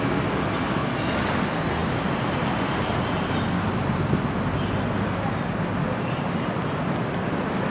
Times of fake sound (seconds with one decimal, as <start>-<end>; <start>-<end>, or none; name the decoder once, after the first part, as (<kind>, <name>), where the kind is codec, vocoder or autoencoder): none